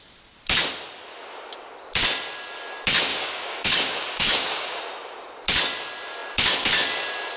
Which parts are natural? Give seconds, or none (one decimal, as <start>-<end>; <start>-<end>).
0.0-3.1; 4.8-7.4